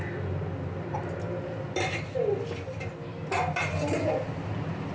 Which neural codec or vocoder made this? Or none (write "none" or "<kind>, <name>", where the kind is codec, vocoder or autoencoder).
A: none